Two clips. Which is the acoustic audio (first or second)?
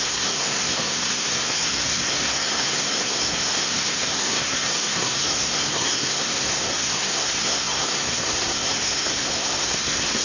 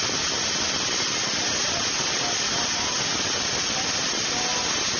second